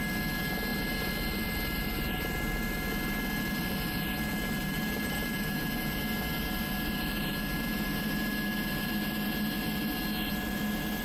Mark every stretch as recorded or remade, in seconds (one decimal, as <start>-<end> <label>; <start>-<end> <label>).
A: 0.0-4.6 recorded; 4.6-6.0 remade; 6.0-11.0 recorded